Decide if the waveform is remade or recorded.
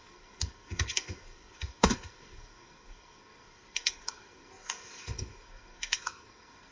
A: remade